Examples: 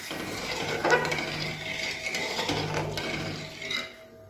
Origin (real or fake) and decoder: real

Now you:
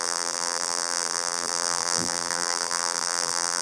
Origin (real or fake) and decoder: fake, vocoder, BigVGAN v2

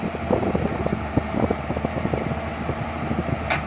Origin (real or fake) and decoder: real